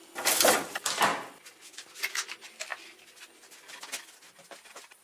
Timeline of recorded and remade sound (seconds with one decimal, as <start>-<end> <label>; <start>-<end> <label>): 0.0-5.0 recorded